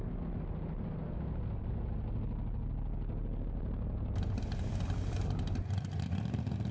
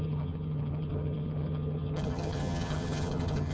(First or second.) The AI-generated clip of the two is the second